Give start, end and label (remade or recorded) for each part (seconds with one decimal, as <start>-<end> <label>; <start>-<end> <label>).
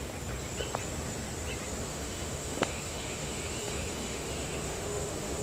0.0-1.9 recorded; 1.9-5.4 remade